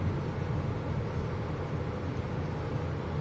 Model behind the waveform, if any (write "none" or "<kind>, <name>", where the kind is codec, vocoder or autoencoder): none